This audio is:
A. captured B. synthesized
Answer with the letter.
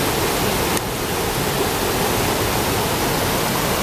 A